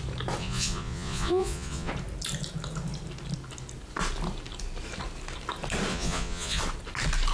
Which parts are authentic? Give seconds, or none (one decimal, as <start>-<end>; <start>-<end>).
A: 0.0-0.4; 1.9-5.9; 6.6-7.3